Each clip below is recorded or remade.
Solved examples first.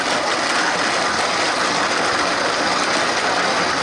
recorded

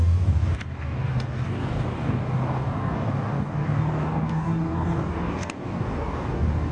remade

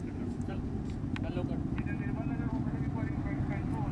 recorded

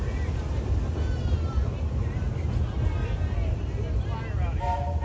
recorded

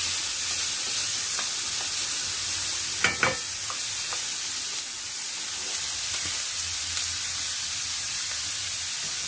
recorded